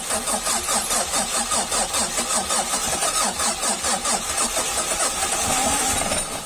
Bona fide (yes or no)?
yes